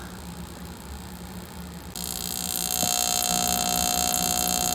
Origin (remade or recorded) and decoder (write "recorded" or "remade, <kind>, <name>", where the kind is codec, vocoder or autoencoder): recorded